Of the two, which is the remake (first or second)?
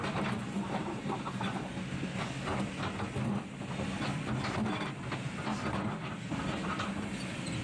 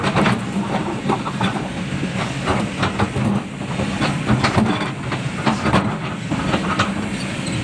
second